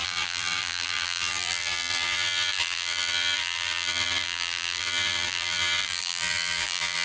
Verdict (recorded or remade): remade